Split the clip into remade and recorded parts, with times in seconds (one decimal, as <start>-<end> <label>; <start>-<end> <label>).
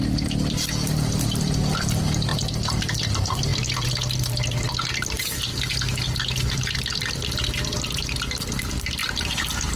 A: 0.0-5.5 remade; 5.5-6.5 recorded; 6.5-9.0 remade; 9.0-9.8 recorded